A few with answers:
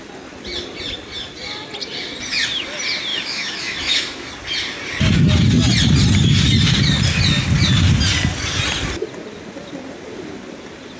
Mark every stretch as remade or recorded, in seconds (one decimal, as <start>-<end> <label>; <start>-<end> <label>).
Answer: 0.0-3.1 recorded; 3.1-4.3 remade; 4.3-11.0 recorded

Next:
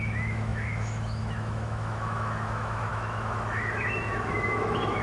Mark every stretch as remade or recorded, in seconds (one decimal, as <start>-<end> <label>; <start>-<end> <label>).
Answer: 0.0-5.0 remade

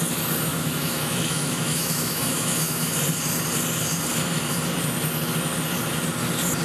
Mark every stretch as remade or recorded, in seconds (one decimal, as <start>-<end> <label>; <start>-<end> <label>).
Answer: 0.0-0.5 recorded; 0.5-2.9 remade; 2.9-6.6 recorded

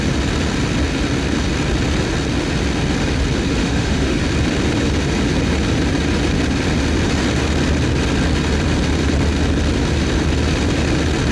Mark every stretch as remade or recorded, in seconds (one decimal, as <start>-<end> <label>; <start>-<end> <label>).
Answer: 0.0-3.6 recorded; 3.6-4.2 remade; 4.2-11.3 recorded

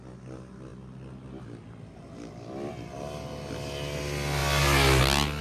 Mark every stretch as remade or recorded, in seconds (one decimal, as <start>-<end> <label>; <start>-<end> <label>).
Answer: 0.0-5.4 recorded

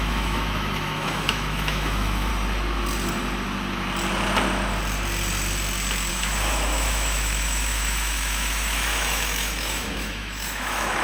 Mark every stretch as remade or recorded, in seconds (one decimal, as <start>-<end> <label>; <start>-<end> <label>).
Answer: 0.0-2.3 remade; 2.3-6.1 recorded; 6.1-11.0 remade

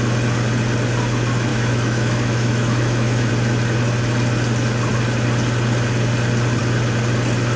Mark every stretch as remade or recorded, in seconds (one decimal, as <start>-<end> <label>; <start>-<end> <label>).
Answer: 0.0-1.5 recorded; 1.5-3.3 remade; 3.3-7.6 recorded

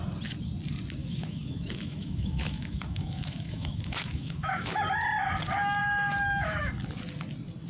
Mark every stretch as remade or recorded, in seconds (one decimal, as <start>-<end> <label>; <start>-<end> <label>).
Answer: 0.0-1.0 recorded; 1.0-4.8 remade; 4.8-5.8 recorded; 5.8-6.7 remade; 6.7-7.7 recorded